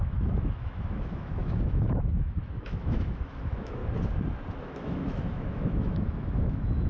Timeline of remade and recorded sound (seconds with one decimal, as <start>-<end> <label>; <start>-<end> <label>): 0.0-3.8 remade; 3.8-4.6 recorded; 4.6-6.9 remade